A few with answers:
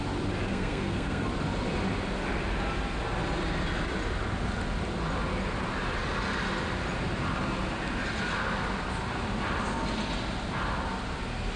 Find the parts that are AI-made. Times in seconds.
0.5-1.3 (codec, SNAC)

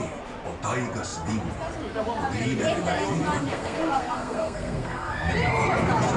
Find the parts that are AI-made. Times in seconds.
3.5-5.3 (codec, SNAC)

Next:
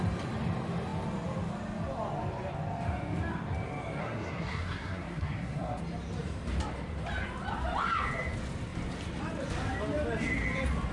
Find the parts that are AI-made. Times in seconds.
4.0-5.8 (codec, SNAC)

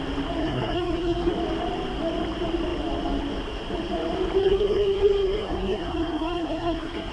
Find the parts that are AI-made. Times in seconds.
0.4-1.3 (codec, SNAC); 4.4-7.1

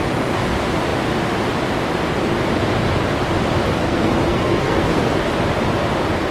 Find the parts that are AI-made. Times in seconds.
3.7-5.3 (codec, SNAC)